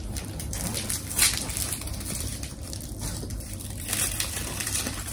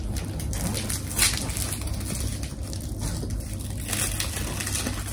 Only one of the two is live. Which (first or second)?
second